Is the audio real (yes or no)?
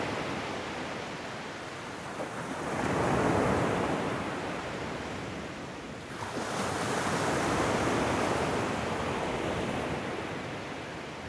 yes